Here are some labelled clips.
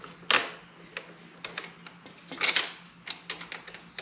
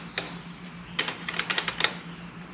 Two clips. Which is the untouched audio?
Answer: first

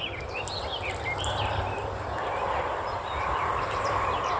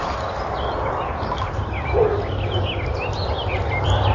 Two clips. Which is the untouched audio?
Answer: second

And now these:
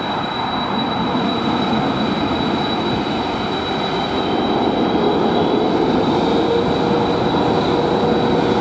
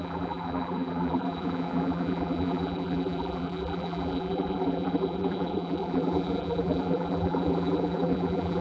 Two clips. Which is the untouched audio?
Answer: first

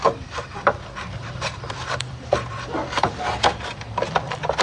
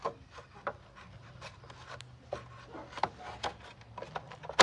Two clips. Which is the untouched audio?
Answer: second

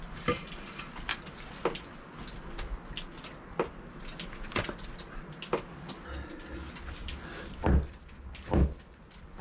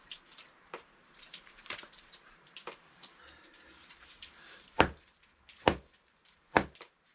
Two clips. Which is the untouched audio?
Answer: first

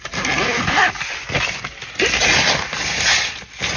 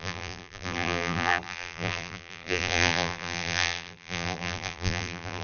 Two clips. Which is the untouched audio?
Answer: first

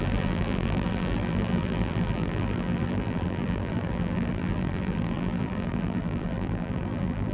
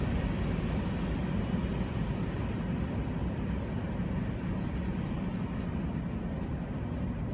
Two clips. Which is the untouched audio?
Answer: second